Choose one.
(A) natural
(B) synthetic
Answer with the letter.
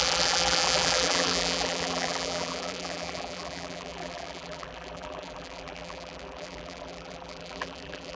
B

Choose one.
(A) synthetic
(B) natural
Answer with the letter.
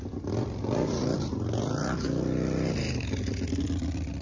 A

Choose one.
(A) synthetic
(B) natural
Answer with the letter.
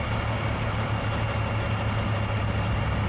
B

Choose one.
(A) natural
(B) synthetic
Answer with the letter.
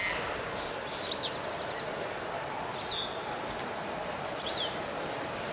A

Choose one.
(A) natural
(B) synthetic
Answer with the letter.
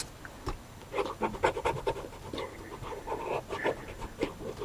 A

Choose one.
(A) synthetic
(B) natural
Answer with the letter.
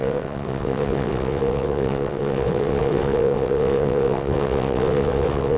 A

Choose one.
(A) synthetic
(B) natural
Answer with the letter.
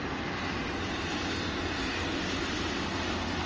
B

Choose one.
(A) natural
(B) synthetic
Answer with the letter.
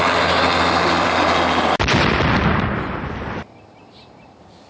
A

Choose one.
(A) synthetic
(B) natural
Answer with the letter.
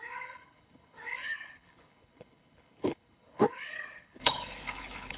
A